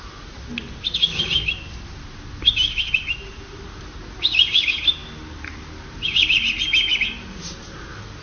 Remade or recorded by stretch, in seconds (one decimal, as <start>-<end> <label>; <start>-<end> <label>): 0.0-8.2 recorded